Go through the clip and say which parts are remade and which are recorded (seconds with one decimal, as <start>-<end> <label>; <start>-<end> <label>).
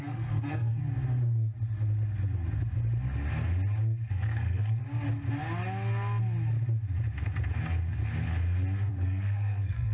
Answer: 0.0-0.8 remade; 0.8-4.1 recorded; 4.1-4.8 remade; 4.8-8.9 recorded; 8.9-9.9 remade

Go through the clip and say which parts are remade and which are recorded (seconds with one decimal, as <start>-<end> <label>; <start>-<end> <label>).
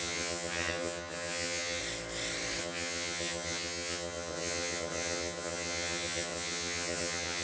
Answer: 0.0-1.8 remade; 1.8-2.6 recorded; 2.6-7.4 remade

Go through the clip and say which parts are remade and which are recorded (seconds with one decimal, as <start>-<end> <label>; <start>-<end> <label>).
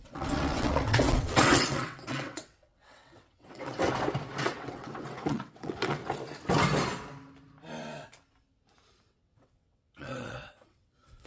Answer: 0.0-3.8 remade; 3.8-4.4 recorded; 4.4-6.0 remade; 6.0-9.0 recorded; 9.0-11.3 remade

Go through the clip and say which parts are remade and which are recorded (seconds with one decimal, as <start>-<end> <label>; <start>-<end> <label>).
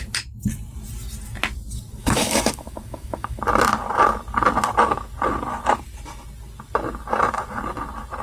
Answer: 0.0-2.0 recorded; 2.0-3.4 remade; 3.4-8.2 recorded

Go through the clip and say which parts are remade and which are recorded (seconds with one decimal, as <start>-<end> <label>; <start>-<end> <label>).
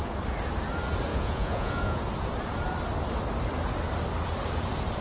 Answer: 0.0-1.1 recorded; 1.1-2.0 remade; 2.0-5.0 recorded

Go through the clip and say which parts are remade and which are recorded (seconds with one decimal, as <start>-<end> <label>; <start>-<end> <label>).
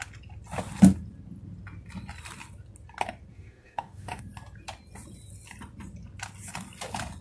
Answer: 0.0-3.3 recorded; 3.3-4.2 remade; 4.2-7.2 recorded